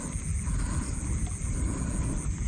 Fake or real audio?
real